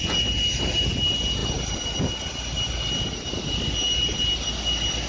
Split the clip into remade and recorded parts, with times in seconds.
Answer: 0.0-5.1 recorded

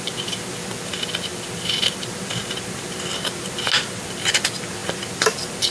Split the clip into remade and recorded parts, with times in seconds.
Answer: 0.0-5.7 recorded